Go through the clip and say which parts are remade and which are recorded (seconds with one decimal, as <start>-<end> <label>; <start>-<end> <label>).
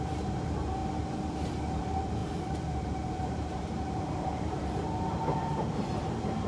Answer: 0.0-0.8 remade; 0.8-1.8 recorded; 1.8-6.5 remade